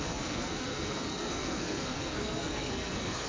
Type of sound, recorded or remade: remade